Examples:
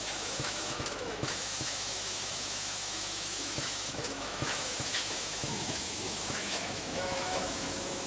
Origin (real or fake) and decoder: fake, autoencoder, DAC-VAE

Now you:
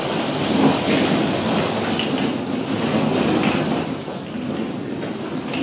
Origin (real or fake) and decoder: real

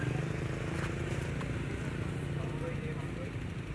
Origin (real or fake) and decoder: real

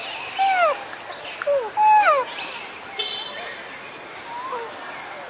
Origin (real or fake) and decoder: real